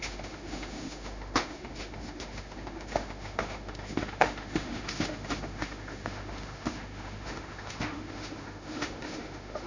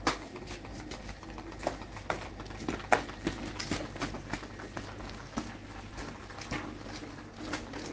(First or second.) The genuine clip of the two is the second